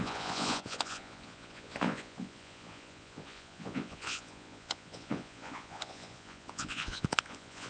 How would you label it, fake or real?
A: fake